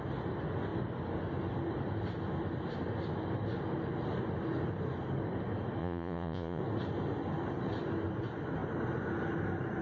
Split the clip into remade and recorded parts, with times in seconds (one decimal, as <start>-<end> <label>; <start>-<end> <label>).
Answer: 0.0-5.8 recorded; 5.8-6.6 remade; 6.6-9.8 recorded